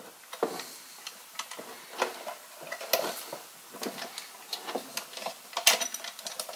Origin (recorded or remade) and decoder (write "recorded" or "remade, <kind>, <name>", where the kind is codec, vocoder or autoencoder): recorded